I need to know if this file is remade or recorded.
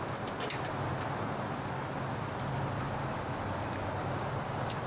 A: recorded